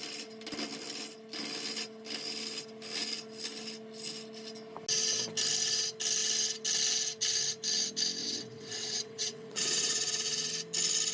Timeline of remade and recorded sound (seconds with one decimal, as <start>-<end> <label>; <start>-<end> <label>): 0.0-8.2 recorded; 8.2-10.5 remade; 10.5-11.1 recorded